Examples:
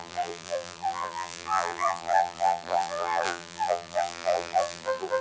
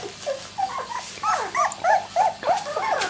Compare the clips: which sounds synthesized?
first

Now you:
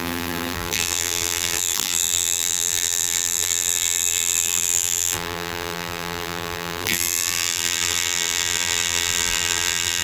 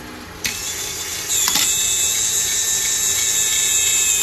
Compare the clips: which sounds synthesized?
first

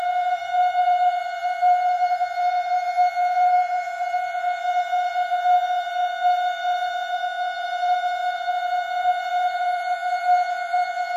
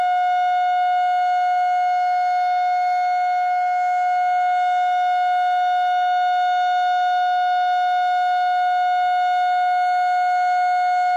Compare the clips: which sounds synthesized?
first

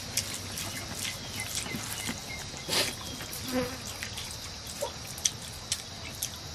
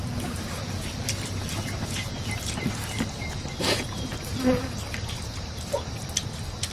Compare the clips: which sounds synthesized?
second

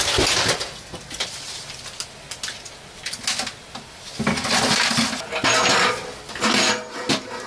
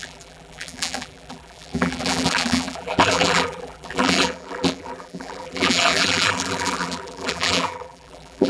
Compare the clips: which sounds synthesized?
second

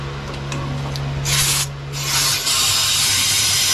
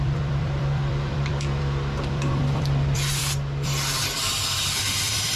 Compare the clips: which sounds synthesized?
second